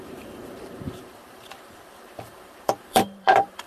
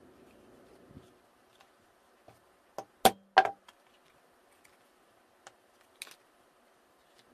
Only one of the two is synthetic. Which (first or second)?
first